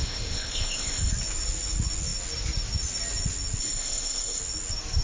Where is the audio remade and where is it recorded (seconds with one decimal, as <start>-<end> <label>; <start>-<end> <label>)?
0.0-1.1 remade; 1.1-3.6 recorded; 3.6-4.4 remade; 4.4-5.0 recorded